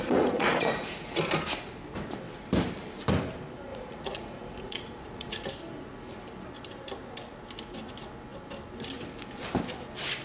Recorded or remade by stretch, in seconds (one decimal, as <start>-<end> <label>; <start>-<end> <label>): 0.0-1.2 remade; 1.2-3.7 recorded; 3.7-5.5 remade; 5.5-10.2 recorded